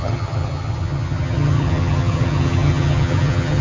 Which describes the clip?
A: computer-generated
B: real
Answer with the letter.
A